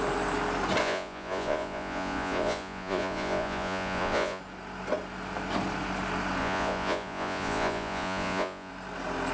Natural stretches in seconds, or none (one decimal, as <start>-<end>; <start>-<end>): 0.0-0.8; 4.4-6.4; 8.7-9.3